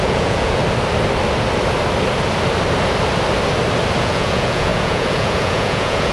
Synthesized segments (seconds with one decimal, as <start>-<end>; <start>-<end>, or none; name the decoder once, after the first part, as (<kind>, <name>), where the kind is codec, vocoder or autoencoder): 0.0-0.6 (vocoder, Vocos); 4.0-6.1